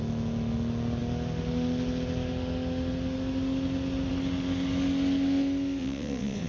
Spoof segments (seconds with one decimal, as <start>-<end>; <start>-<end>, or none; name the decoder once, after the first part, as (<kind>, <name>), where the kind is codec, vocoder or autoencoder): 5.8-6.5 (vocoder, WaveNeXt)